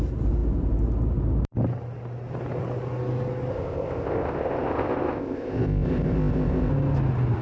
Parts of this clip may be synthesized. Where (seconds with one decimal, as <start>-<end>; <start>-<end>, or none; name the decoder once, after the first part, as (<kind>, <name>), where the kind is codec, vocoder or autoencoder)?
3.5-6.7 (codec, ZipCodec)